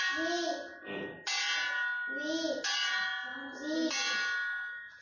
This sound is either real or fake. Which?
real